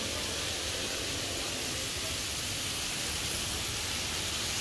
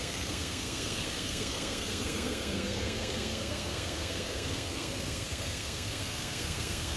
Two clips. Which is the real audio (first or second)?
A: first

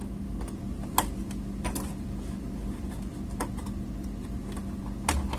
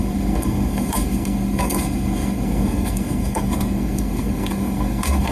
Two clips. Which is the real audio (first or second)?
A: first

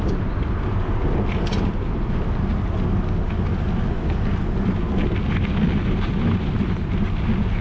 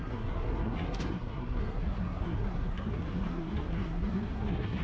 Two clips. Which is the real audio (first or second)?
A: first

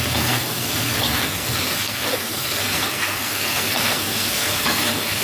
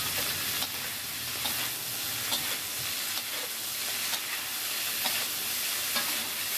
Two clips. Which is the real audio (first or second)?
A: second